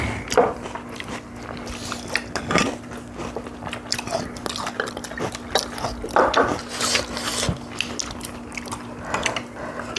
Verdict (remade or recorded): recorded